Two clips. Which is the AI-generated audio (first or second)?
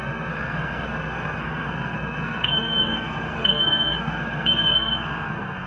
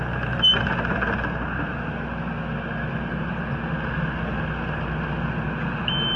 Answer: first